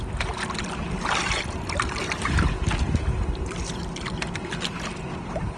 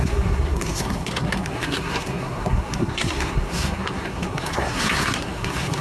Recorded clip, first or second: first